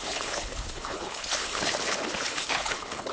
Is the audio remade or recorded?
remade